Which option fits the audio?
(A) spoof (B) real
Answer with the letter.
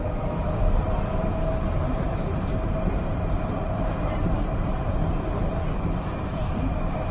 A